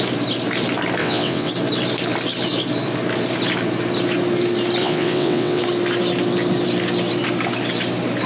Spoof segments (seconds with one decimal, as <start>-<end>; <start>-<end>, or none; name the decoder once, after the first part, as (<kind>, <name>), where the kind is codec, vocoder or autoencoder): 1.0-1.5 (vocoder, WaveNeXt); 4.8-5.6

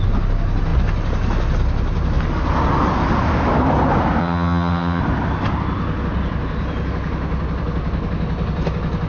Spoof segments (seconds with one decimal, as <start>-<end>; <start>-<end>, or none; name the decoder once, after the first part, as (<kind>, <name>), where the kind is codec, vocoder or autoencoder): 4.2-5.0 (vocoder, HiFi-GAN)

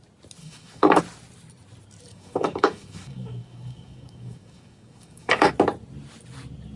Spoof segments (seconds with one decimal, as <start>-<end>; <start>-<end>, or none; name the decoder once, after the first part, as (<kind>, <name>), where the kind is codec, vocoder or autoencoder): 0.4-1.0 (codec, DAC); 2.1-5.5

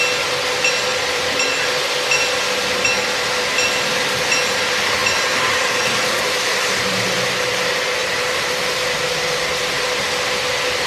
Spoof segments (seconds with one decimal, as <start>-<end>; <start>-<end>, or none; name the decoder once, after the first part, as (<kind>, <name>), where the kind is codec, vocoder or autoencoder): 0.9-1.9 (vocoder, BigVGAN v2); 5.0-6.6; 8.0-8.6

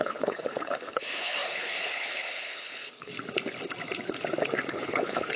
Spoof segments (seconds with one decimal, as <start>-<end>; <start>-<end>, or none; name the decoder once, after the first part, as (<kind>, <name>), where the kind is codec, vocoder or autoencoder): 0.0-3.1 (codec, HILCodec); 4.7-5.4

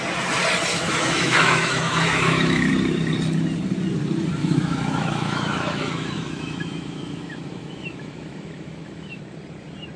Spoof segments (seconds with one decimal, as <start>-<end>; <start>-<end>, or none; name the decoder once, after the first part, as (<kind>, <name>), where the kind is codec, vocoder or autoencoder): 0.7-2.7 (autoencoder, DAC-VAE); 4.4-9.2